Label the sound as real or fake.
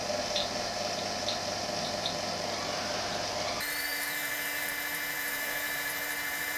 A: fake